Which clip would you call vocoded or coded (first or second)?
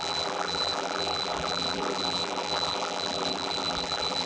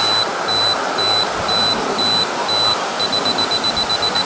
first